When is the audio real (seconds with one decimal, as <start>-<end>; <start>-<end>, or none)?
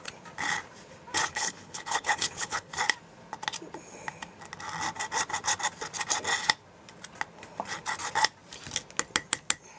0.0-1.3; 2.7-9.8